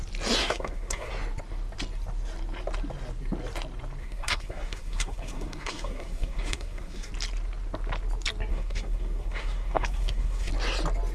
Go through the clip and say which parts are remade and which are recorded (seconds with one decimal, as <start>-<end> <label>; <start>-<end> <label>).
0.0-0.4 recorded; 0.4-1.1 remade; 1.1-4.0 recorded; 4.0-7.1 remade; 7.1-8.5 recorded; 8.5-10.5 remade; 10.5-11.1 recorded